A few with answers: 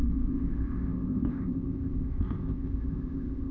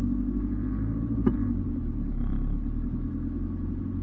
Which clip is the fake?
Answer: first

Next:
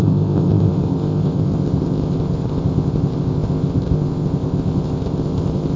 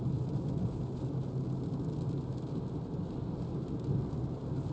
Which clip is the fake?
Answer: first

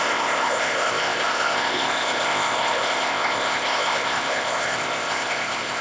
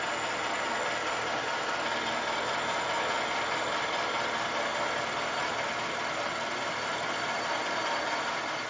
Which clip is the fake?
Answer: first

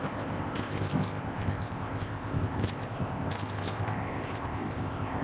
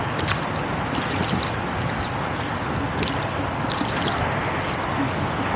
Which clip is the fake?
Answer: first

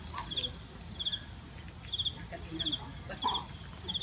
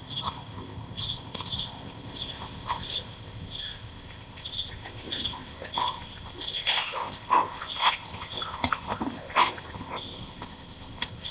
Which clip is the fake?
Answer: second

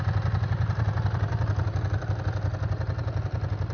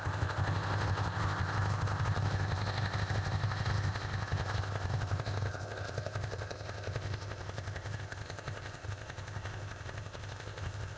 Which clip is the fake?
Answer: second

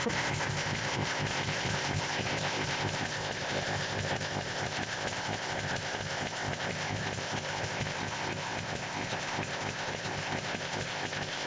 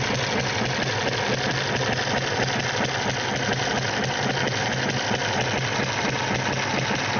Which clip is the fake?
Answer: first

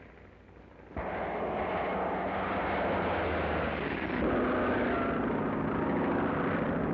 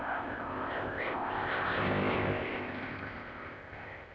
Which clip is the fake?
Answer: second